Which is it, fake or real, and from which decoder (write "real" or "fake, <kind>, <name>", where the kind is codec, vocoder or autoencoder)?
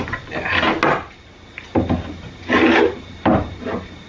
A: real